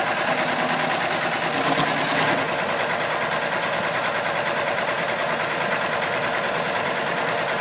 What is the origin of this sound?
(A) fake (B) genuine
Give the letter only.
B